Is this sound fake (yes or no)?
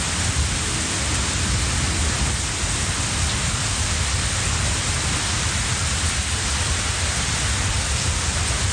no